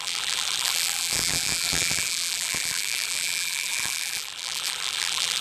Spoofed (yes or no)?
yes